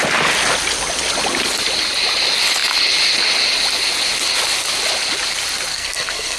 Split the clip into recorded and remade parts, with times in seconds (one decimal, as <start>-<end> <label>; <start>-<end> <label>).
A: 0.0-5.7 recorded; 5.7-6.4 remade